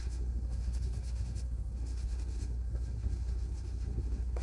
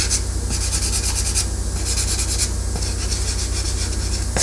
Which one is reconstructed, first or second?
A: first